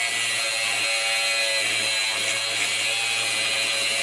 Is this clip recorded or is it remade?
recorded